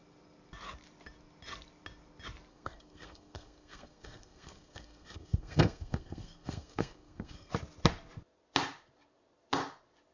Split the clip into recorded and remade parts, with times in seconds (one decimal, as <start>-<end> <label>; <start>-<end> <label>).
0.0-2.5 recorded; 2.5-7.5 remade; 7.5-10.1 recorded